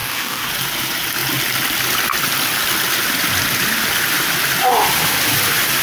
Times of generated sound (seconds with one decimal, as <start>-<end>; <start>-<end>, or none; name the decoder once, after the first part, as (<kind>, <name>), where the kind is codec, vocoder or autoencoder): 0.0-0.5 (codec, DAC)